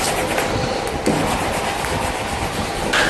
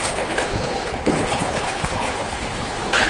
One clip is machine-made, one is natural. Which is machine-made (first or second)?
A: second